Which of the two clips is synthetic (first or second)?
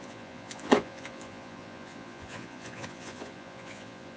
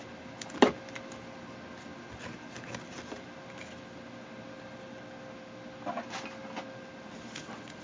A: first